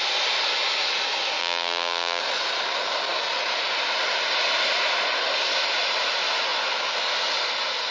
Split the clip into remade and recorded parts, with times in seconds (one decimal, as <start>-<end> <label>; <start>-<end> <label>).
0.0-1.4 recorded; 1.4-2.2 remade; 2.2-7.9 recorded